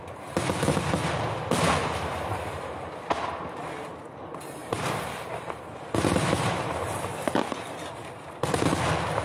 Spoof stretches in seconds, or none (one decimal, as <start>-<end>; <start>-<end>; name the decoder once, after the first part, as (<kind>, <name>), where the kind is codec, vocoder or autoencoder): 1.8-3.7 (vocoder, BigVGAN v2); 4.6-7.4